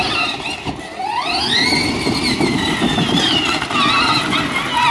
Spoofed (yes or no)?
no